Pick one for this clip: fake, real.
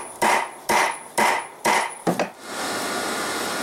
real